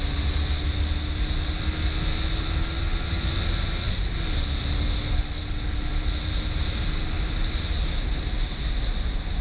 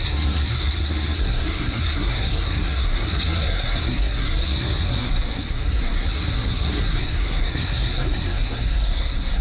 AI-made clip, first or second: second